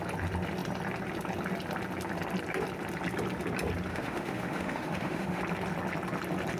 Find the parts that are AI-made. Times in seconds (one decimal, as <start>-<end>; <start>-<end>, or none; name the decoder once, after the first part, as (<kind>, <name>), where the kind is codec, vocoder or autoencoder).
3.9-5.4 (autoencoder, DAC-VAE)